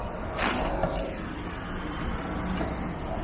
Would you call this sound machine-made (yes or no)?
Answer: no